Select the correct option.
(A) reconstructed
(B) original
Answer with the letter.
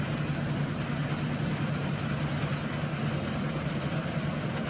B